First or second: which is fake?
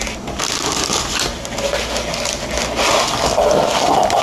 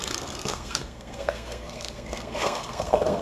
second